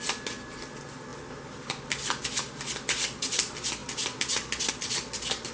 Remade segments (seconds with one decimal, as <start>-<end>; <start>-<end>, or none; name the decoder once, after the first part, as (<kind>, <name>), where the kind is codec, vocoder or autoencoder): none